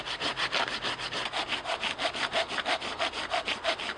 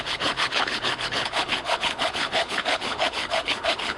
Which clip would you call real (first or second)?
first